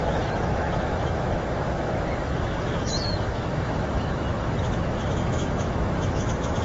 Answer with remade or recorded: remade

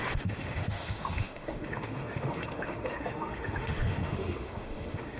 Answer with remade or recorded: remade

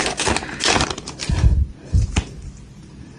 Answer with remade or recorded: recorded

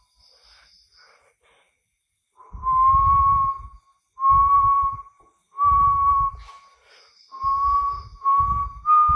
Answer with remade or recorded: recorded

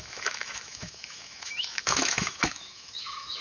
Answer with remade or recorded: remade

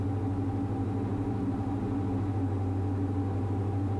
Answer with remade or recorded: recorded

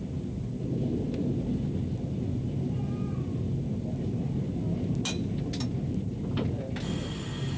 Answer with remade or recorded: recorded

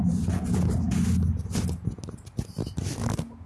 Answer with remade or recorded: recorded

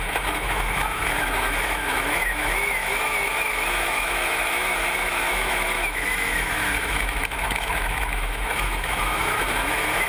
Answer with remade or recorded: remade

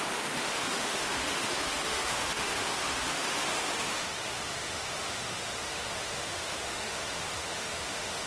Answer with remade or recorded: remade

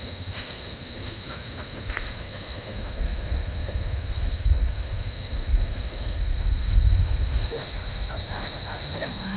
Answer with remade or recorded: remade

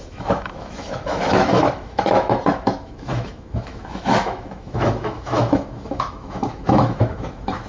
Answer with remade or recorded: remade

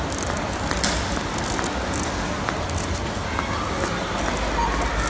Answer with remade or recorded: recorded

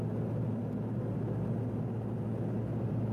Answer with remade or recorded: recorded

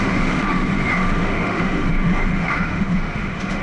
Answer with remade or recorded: remade